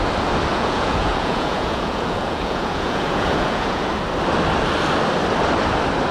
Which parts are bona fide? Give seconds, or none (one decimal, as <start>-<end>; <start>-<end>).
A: 0.0-0.5; 3.9-6.1